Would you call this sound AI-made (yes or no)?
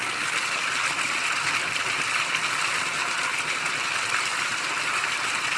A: no